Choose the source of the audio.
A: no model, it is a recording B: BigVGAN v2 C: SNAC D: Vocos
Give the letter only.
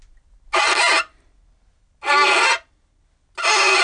A